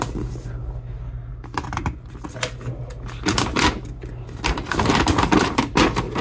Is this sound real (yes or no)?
yes